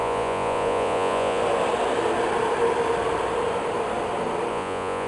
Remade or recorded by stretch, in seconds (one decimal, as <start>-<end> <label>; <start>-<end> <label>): 0.0-1.4 remade; 1.4-4.5 recorded; 4.5-5.1 remade